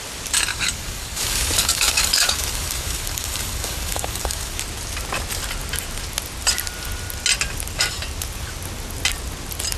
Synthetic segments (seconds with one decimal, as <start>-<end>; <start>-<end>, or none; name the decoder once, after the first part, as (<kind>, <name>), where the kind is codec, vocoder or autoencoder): 0.5-4.6 (codec, DAC)